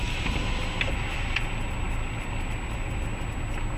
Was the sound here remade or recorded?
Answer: recorded